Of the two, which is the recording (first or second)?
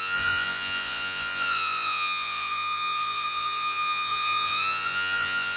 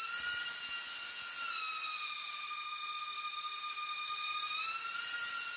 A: second